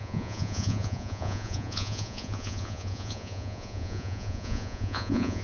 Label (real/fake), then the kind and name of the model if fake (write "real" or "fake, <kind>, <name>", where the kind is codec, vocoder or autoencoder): fake, vocoder, Vocos